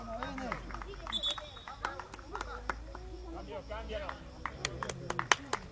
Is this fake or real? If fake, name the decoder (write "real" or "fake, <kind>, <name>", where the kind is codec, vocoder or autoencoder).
real